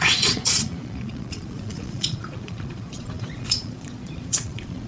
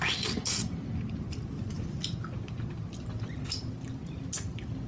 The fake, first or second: first